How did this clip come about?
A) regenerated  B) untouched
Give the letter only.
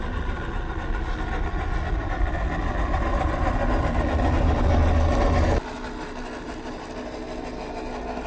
B